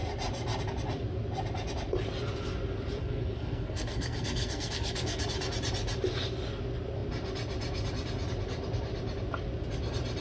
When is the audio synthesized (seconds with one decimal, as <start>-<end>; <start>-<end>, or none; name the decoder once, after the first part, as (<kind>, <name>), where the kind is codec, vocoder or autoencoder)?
3.0-5.2 (codec, SNAC)